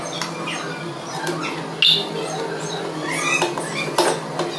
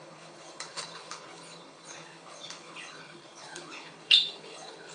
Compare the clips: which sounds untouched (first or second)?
first